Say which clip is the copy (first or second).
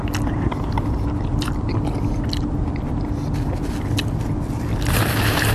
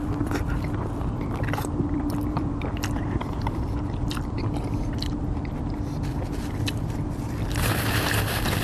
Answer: second